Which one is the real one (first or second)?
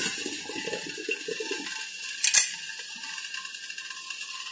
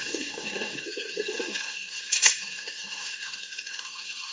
first